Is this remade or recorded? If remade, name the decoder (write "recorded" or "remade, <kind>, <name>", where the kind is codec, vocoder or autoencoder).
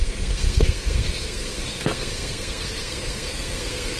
remade, codec, SNAC